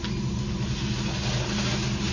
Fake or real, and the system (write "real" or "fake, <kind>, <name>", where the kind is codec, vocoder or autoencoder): real